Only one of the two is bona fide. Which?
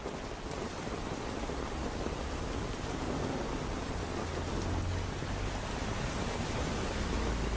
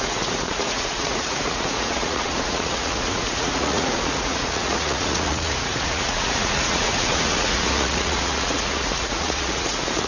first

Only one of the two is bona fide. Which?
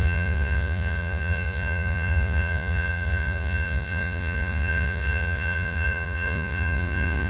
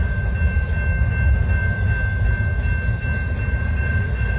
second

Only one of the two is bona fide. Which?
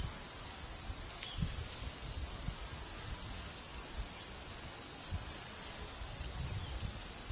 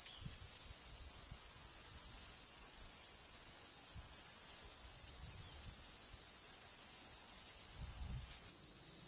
first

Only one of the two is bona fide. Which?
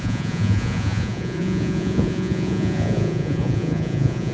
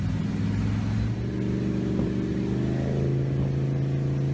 second